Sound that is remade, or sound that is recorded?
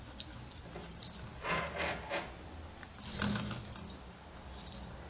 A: recorded